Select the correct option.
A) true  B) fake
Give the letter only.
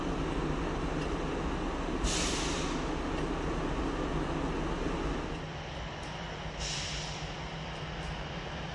A